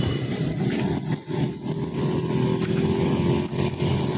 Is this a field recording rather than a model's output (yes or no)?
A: yes